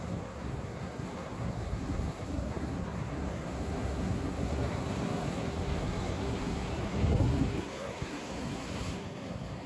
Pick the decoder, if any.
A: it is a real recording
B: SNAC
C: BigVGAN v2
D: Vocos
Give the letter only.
B